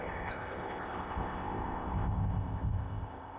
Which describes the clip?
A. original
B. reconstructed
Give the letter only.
B